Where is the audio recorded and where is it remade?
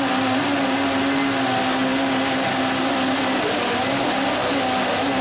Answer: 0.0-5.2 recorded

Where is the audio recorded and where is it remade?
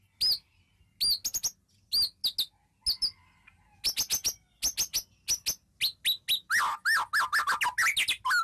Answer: 0.0-8.4 recorded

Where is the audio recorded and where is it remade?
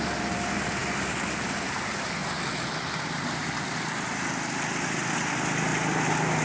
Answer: 0.0-2.2 recorded; 2.2-3.8 remade; 3.8-5.7 recorded; 5.7-6.4 remade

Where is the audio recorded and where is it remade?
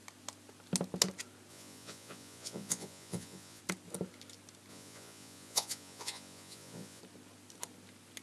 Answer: 0.0-1.5 recorded; 1.5-3.6 remade; 3.6-4.7 recorded; 4.7-7.0 remade; 7.0-8.2 recorded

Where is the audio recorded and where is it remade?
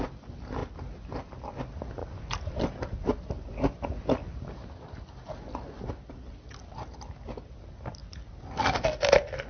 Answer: 0.0-9.5 recorded